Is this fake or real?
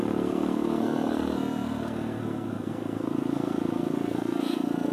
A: fake